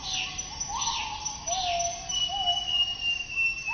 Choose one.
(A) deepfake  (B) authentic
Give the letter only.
B